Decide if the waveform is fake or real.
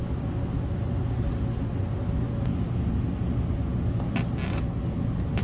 real